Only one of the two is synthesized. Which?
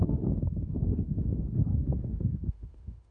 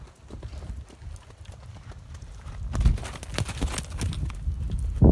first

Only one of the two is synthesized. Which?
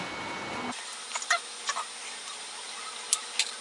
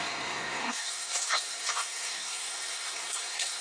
second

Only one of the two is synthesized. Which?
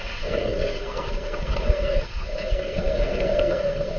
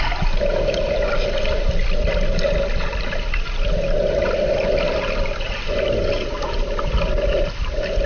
first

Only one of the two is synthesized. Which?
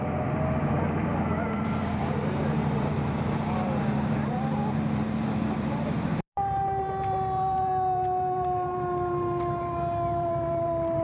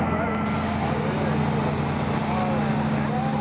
first